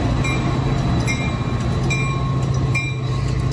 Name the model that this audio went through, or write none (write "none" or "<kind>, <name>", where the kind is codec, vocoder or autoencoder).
none